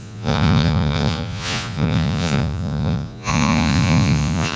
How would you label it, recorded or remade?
remade